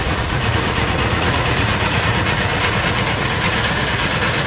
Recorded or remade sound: remade